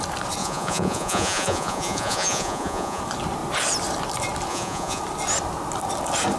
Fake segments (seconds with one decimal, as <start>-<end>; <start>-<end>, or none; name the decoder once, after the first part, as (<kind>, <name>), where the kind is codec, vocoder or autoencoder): 0.4-3.0 (vocoder, Vocos); 4.5-5.0